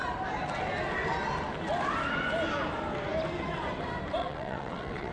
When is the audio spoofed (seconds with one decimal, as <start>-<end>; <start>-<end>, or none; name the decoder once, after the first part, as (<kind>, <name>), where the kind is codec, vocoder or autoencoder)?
4.2-5.1 (vocoder, WaveNeXt)